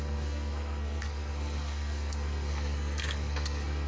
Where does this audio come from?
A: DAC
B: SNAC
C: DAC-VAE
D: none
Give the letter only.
B